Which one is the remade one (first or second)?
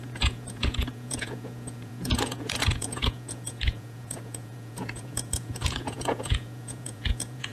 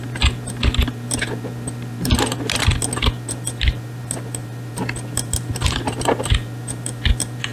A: first